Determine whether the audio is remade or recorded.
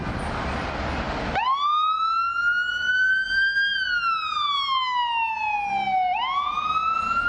recorded